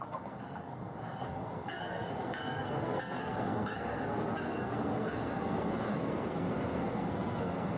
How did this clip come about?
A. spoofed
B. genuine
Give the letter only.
A